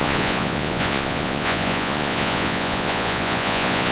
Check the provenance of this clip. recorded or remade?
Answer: remade